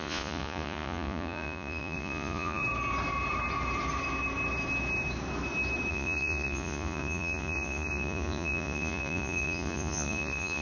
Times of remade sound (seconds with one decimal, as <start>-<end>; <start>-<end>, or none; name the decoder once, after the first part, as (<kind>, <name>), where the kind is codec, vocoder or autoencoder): 0.0-2.6 (vocoder, Vocos); 5.9-10.6